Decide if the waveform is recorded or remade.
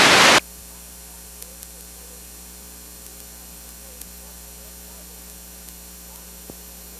recorded